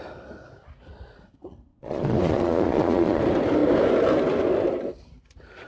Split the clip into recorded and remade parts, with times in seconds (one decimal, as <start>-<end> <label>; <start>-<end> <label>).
0.0-1.7 recorded; 1.7-3.2 remade; 3.2-5.7 recorded